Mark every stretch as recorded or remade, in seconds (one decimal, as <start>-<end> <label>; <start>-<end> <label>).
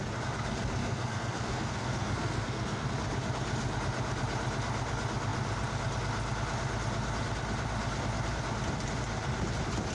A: 0.0-0.8 recorded; 0.8-2.9 remade; 2.9-9.9 recorded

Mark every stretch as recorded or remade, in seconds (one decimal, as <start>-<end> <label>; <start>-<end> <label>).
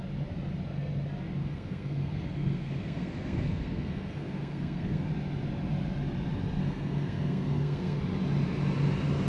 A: 0.0-1.4 recorded; 1.4-5.1 remade; 5.1-6.6 recorded; 6.6-8.0 remade; 8.0-9.3 recorded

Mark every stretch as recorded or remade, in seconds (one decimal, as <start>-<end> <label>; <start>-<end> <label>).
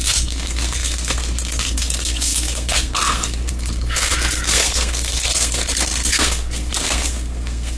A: 0.0-7.8 remade